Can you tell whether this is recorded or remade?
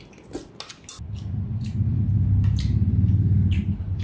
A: recorded